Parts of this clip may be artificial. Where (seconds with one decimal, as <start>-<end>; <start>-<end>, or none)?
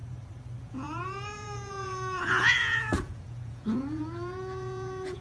0.6-5.2